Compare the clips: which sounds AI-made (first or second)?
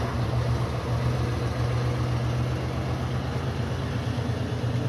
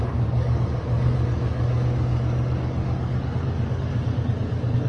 second